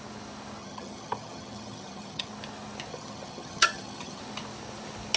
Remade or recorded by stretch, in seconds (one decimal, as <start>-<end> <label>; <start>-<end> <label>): 0.0-0.6 recorded; 0.6-2.3 remade; 2.3-2.9 recorded; 2.9-4.2 remade; 4.2-5.2 recorded